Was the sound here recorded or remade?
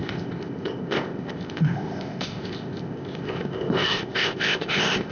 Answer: remade